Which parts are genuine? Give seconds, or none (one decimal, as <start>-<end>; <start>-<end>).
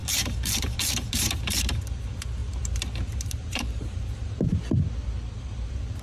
2.0-2.4; 4.6-6.0